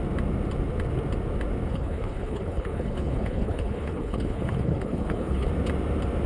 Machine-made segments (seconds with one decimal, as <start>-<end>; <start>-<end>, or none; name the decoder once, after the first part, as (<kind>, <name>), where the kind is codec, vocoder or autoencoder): 1.7-5.5 (codec, HILCodec)